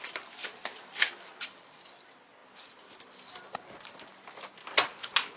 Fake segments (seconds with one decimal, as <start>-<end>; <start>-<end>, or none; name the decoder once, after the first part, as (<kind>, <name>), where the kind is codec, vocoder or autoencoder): none